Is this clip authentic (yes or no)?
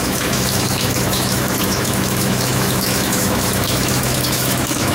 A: no